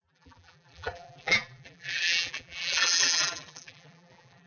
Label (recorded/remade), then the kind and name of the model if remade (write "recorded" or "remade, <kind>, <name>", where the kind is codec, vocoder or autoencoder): remade, vocoder, BigVGAN v2